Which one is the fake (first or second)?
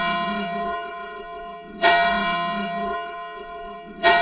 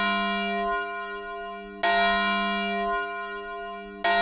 first